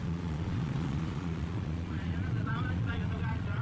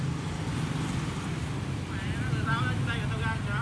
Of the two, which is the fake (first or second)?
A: first